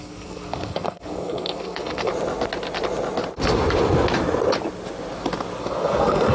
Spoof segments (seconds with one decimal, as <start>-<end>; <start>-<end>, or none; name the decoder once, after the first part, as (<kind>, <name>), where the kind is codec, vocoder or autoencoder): 0.0-2.1 (codec, SNAC); 5.6-6.3